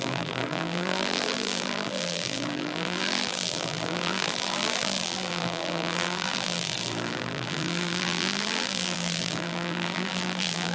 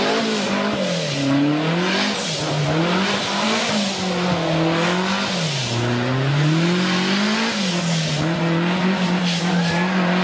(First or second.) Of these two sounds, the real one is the second